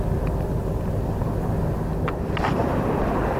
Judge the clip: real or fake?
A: real